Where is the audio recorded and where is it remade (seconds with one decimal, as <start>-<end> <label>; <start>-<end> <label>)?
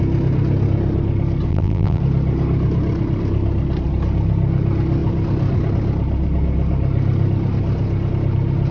0.0-1.5 recorded; 1.5-2.0 remade; 2.0-8.7 recorded